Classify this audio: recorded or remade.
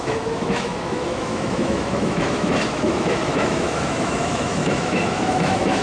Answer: remade